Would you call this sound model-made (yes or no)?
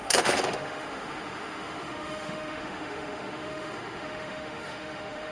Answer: yes